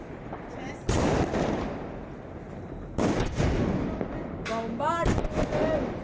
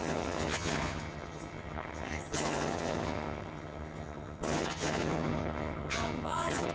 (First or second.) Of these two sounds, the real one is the first